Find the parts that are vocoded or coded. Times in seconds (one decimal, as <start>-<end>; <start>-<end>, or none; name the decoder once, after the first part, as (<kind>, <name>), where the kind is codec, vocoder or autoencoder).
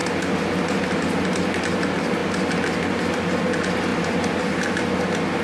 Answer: none